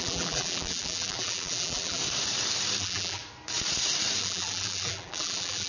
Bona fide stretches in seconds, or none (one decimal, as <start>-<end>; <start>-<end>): 2.0-2.8; 3.2-4.2